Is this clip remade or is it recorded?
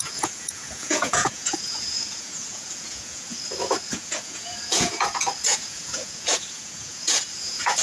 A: remade